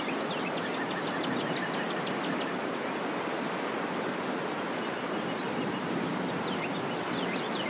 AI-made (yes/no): no